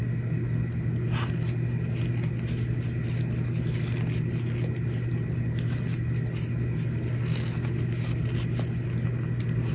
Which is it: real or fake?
real